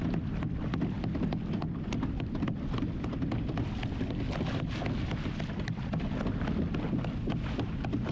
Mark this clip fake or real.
real